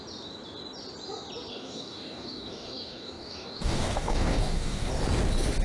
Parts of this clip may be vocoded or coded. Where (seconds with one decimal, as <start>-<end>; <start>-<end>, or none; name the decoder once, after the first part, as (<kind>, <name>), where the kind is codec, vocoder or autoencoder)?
1.5-4.9 (codec, DAC)